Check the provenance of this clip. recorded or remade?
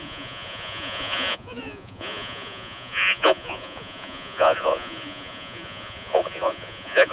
remade